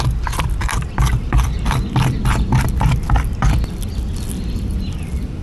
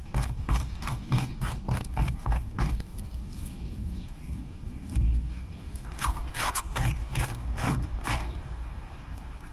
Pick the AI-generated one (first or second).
second